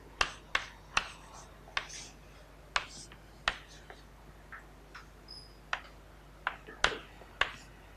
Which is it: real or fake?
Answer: real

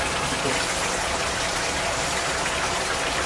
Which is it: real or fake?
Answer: real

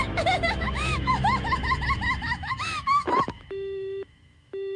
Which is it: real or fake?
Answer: fake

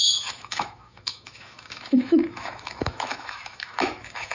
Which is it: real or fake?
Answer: fake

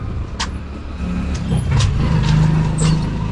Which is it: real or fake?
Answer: real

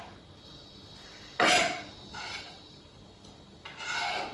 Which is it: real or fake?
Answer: real